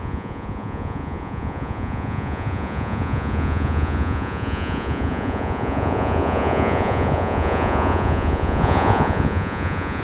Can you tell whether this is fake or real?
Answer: fake